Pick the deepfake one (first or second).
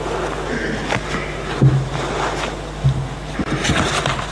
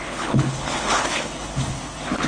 second